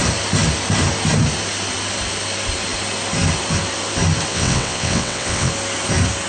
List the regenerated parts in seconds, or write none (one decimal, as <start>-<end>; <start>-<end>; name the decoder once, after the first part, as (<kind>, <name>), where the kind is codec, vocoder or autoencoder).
4.3-5.5 (vocoder, WaveNeXt)